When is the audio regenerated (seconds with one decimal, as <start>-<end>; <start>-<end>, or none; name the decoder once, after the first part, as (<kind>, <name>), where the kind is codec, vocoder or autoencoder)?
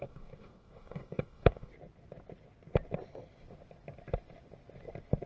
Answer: 0.0-1.7 (codec, DAC)